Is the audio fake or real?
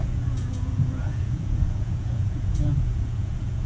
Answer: fake